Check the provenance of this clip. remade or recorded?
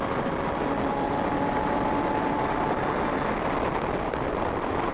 remade